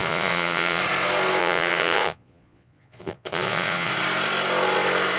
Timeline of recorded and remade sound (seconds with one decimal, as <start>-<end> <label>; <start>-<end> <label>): 0.0-0.8 remade; 0.8-1.4 recorded; 1.4-3.9 remade; 3.9-5.2 recorded